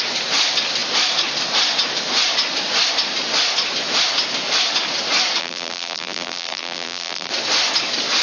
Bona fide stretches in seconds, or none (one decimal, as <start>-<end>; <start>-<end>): 0.0-5.4; 7.3-8.2